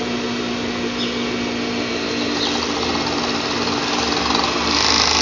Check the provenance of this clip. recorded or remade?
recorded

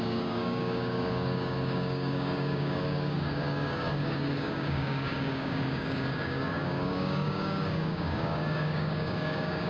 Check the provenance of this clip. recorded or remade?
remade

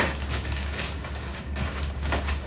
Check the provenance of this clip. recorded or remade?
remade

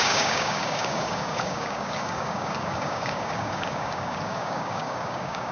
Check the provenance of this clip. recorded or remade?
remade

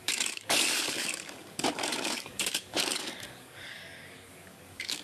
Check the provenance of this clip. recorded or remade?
remade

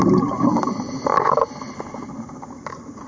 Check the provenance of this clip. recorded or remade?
recorded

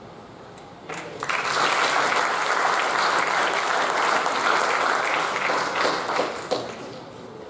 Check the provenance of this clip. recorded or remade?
recorded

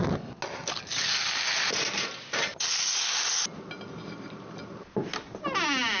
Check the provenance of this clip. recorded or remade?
recorded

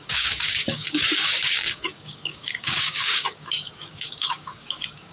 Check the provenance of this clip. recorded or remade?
remade